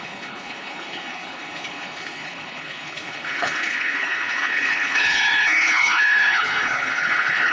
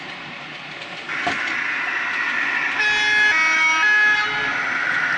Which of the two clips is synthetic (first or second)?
first